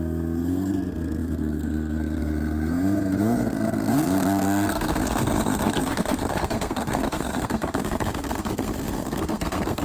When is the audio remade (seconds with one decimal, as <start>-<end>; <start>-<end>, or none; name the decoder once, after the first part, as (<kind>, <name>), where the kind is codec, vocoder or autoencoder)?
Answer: 0.0-9.8 (codec, SNAC)